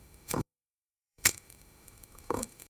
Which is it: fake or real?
fake